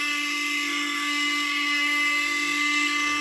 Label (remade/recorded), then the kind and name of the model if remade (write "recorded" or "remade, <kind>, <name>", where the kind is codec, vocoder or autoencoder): remade, codec, SNAC